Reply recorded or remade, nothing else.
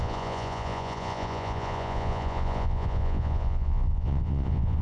remade